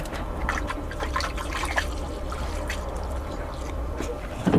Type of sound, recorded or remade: recorded